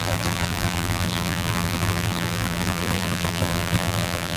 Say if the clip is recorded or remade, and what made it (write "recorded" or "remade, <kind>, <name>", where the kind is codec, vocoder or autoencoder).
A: remade, vocoder, BigVGAN v2